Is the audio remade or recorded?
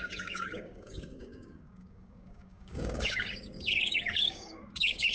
remade